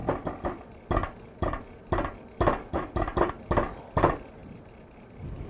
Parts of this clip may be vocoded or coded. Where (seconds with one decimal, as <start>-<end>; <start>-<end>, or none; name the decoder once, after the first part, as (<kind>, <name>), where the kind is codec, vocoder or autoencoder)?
none